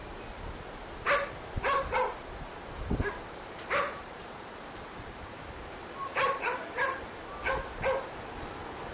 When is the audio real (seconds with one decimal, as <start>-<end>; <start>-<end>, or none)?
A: 0.0-1.4